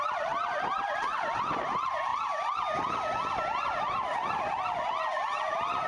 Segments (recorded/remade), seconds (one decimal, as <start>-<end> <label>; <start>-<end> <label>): 0.0-5.9 recorded